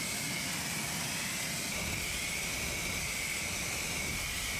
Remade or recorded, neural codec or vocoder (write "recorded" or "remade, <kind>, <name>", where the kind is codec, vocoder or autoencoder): recorded